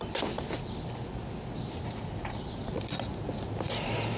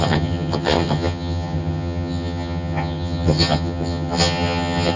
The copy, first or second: second